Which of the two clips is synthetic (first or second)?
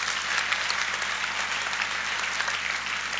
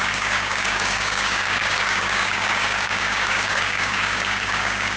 second